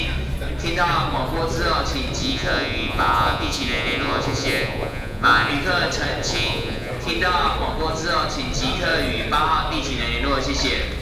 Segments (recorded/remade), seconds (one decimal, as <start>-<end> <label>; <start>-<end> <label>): 0.0-2.2 recorded; 2.2-5.5 remade; 5.5-6.2 recorded; 6.2-6.9 remade; 6.9-11.0 recorded